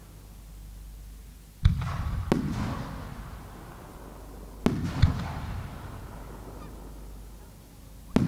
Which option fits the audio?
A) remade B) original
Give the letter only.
B